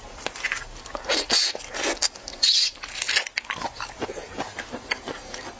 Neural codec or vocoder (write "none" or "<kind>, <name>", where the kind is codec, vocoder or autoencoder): none